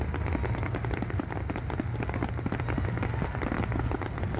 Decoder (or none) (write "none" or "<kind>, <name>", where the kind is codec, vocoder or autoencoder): none